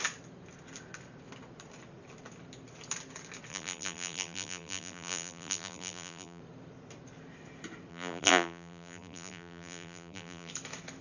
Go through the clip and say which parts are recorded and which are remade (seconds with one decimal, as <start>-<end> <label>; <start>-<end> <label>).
0.0-3.5 recorded; 3.5-6.4 remade; 6.4-7.9 recorded; 7.9-10.5 remade; 10.5-11.0 recorded